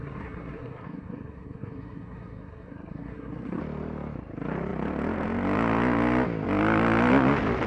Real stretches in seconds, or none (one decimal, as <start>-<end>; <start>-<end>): 3.6-7.7